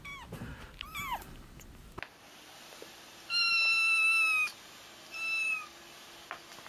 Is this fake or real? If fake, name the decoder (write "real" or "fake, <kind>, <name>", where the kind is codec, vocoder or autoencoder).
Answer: real